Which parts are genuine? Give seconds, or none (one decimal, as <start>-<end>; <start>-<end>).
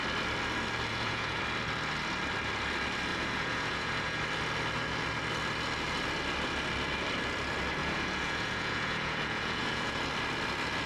0.0-0.9; 1.4-3.1; 4.2-7.8; 10.0-10.9